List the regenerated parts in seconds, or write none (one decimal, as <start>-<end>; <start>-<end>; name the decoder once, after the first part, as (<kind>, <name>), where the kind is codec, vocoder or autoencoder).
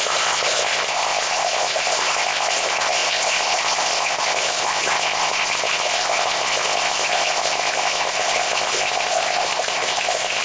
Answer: 0.0-10.4 (codec, ZipCodec)